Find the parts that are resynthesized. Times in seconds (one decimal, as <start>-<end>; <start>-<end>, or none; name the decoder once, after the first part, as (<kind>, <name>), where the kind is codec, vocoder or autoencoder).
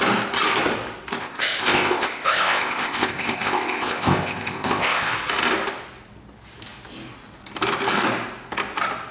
1.2-5.1 (codec, ZipCodec)